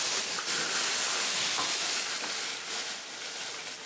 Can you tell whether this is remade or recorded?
recorded